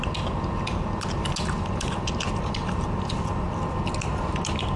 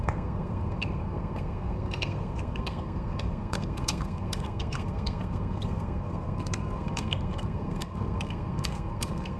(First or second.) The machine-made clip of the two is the second